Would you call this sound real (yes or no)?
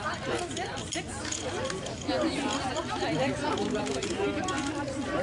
yes